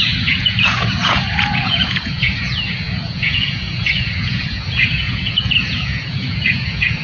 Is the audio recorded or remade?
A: remade